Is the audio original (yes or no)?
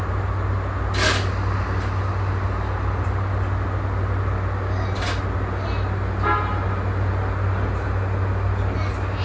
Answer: yes